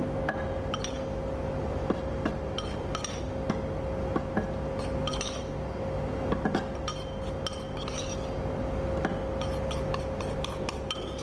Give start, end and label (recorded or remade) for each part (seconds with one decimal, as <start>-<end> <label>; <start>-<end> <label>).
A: 0.0-11.2 recorded